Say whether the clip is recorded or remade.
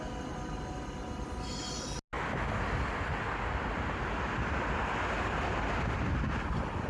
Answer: recorded